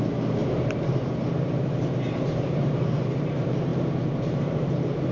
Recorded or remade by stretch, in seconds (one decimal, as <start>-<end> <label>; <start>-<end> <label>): 0.0-5.1 remade